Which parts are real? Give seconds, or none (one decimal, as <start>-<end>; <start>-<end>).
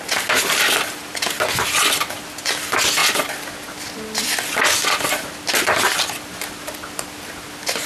0.0-3.0; 3.9-7.9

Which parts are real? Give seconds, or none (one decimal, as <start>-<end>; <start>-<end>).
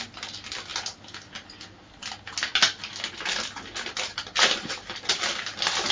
0.0-5.9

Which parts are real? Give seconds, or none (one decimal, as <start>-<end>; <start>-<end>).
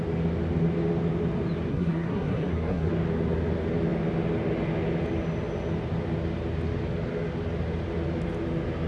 0.0-1.7; 2.9-8.9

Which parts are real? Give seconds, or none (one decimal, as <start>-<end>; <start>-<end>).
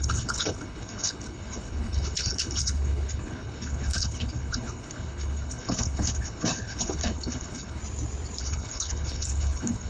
7.8-8.4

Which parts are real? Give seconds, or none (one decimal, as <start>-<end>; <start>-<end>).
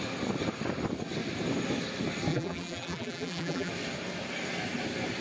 0.0-2.3; 3.7-5.2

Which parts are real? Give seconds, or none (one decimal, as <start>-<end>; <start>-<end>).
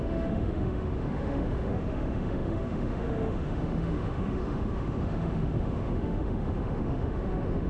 none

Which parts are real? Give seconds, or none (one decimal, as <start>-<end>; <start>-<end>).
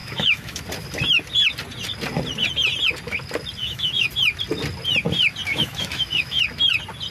0.6-3.6; 4.1-5.5; 6.4-7.1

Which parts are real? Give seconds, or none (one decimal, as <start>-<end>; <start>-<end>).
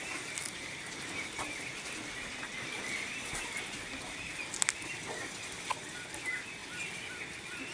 0.0-7.7